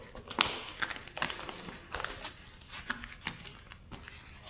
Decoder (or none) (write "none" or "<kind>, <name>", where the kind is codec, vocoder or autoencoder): none